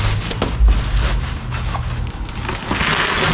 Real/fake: real